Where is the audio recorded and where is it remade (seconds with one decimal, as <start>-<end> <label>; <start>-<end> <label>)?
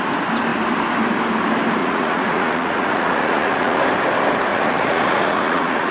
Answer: 0.0-1.8 recorded; 1.8-3.8 remade; 3.8-4.5 recorded; 4.5-5.9 remade